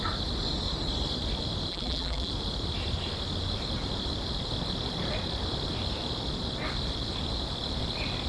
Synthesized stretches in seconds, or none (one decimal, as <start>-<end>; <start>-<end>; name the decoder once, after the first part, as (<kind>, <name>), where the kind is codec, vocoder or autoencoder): 1.7-2.3 (vocoder, BigVGAN v2)